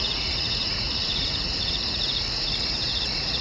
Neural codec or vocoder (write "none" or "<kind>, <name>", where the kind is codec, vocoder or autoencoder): vocoder, Vocos